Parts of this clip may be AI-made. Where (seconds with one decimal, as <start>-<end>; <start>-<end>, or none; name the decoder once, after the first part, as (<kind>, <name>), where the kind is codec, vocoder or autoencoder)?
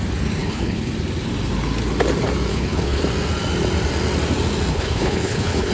0.4-0.9 (codec, HILCodec); 2.5-3.0; 4.7-5.7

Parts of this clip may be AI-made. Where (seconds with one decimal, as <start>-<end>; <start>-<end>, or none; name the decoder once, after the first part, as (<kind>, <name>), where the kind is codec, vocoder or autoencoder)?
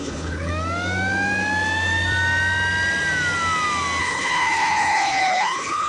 0.0-0.5 (codec, HILCodec); 4.0-5.9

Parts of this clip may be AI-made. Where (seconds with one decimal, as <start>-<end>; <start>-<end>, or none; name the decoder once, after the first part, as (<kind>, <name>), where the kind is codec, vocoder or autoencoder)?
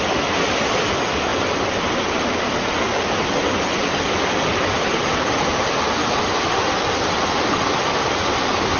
none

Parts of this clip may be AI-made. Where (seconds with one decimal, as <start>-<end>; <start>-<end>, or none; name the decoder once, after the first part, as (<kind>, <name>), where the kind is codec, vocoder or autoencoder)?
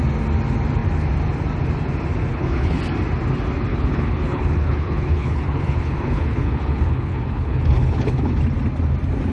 2.3-2.8 (codec, HILCodec); 3.7-8.4